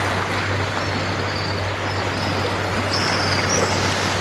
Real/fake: real